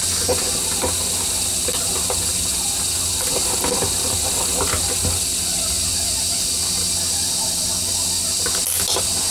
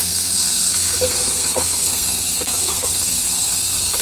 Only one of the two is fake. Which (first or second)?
second